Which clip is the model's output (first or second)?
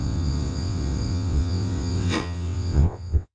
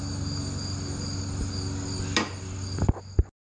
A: first